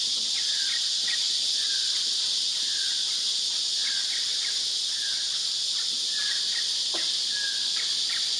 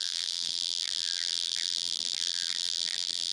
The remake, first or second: second